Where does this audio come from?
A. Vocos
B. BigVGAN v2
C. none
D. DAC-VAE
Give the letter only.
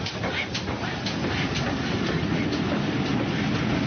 C